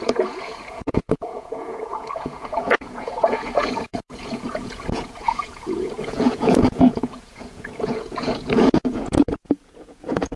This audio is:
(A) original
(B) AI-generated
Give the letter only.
B